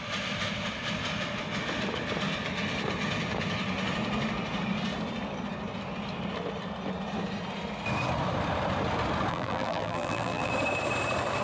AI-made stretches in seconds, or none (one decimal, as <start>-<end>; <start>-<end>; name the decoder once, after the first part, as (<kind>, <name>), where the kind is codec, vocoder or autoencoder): 9.3-10.5 (vocoder, BigVGAN v2)